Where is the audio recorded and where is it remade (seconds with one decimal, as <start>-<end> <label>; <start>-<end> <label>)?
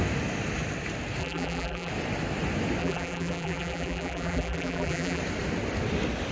0.0-1.2 recorded; 1.2-1.9 remade; 1.9-2.8 recorded; 2.8-5.2 remade; 5.2-6.3 recorded